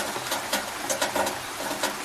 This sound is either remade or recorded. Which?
recorded